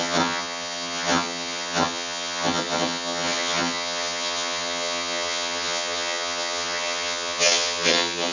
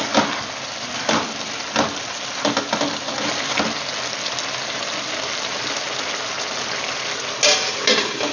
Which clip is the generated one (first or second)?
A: first